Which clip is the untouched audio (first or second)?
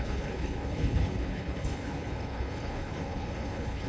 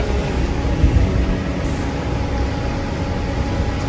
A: second